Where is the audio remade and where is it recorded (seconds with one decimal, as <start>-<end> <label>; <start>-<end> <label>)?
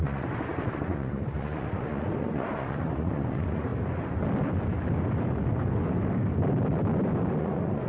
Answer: 0.0-3.7 remade; 3.7-7.4 recorded; 7.4-7.9 remade